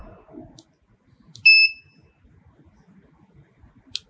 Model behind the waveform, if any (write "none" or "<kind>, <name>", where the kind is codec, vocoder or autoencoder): none